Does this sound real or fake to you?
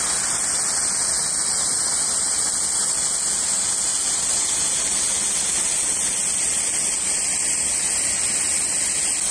real